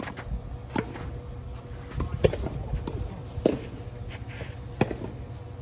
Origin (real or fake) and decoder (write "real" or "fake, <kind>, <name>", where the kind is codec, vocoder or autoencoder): real